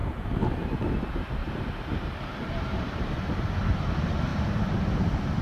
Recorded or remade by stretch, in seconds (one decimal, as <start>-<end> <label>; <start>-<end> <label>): 0.0-0.5 remade; 0.5-1.4 recorded; 1.4-3.3 remade; 3.3-4.3 recorded; 4.3-5.4 remade